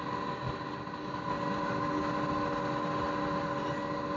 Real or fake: real